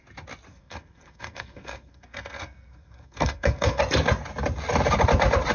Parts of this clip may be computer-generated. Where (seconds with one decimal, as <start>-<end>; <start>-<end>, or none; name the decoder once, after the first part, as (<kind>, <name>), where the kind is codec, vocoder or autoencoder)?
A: 0.5-3.8 (codec, SNAC)